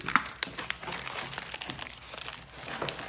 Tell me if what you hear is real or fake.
real